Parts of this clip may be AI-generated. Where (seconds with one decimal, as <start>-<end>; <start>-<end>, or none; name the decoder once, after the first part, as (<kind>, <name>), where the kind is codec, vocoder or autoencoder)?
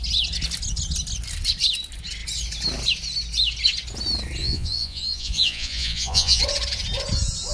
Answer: 4.4-6.4 (vocoder, Vocos)